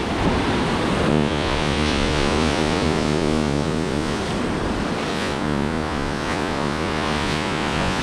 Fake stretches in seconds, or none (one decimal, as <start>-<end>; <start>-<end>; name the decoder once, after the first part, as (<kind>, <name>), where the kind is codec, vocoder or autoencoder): 1.1-4.2 (vocoder, Vocos); 5.1-8.0